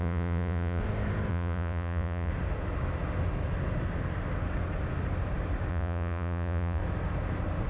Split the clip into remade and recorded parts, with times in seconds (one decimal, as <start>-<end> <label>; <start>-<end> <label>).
0.0-0.8 remade; 0.8-1.3 recorded; 1.3-2.3 remade; 2.3-5.7 recorded; 5.7-6.8 remade; 6.8-7.7 recorded